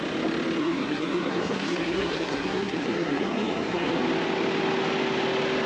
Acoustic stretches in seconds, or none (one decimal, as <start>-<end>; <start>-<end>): 0.0-0.6; 4.0-5.7